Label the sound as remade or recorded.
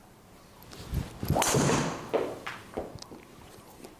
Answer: recorded